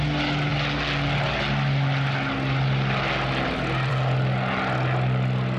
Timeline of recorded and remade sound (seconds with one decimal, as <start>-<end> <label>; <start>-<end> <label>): 0.0-5.6 recorded